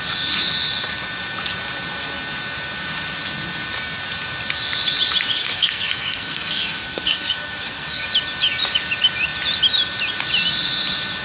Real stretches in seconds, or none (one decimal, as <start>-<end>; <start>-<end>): 0.0-5.4; 8.0-11.2